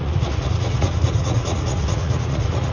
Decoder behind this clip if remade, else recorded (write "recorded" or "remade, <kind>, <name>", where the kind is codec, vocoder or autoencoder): remade, vocoder, Vocos